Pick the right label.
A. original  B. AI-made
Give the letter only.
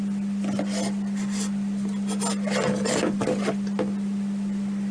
A